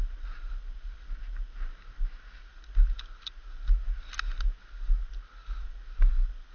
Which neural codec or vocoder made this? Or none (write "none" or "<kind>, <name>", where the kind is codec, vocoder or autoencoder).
none